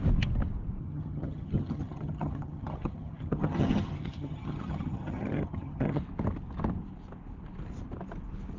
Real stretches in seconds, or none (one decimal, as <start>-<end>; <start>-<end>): 0.0-0.8; 6.0-8.6